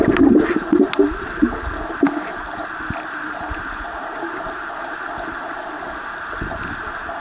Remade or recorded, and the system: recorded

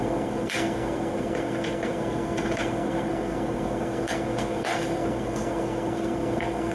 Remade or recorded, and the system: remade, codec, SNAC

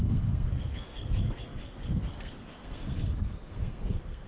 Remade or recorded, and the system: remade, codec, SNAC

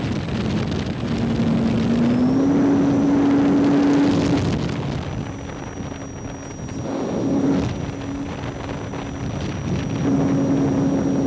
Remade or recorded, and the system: recorded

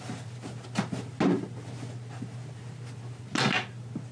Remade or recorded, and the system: recorded